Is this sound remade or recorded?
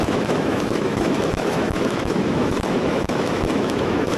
remade